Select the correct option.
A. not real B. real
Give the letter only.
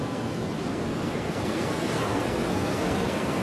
A